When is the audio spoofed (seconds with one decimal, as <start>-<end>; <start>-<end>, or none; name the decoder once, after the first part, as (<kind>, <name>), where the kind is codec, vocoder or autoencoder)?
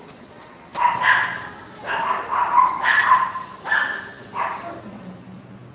none